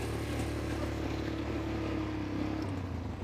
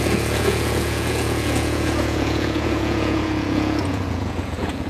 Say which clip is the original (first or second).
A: first